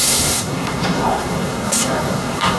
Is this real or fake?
fake